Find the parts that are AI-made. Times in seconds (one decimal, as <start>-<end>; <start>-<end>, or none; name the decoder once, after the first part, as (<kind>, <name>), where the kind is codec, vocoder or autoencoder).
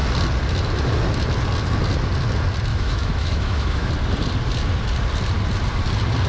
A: 2.7-3.9 (autoencoder, DAC-VAE)